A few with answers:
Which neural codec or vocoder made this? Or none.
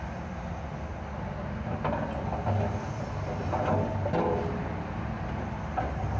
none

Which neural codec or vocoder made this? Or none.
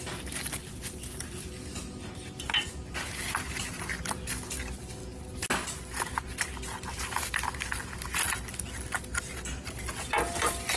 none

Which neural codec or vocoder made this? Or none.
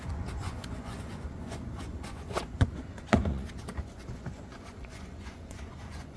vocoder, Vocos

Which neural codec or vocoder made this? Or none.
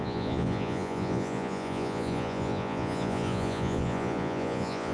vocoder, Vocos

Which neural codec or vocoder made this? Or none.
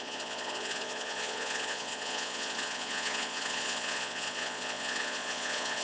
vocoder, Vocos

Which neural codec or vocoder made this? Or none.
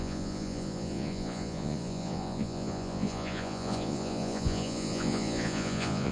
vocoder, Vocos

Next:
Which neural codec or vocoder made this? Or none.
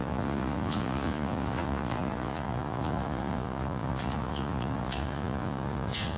vocoder, Vocos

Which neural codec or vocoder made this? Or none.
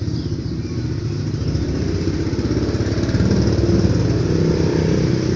none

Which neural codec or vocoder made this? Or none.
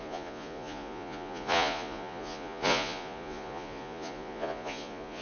vocoder, Vocos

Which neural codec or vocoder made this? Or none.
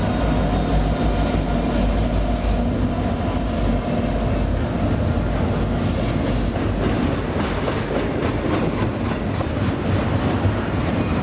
none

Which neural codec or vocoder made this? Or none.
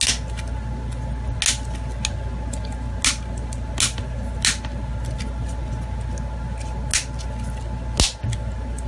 none